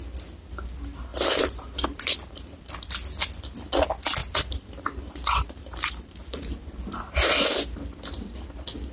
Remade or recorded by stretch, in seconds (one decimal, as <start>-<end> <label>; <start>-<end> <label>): 0.0-1.1 recorded; 1.1-2.7 remade; 2.7-4.2 recorded; 4.2-7.3 remade; 7.3-8.9 recorded